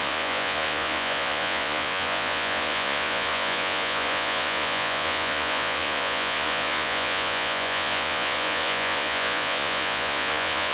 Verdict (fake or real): fake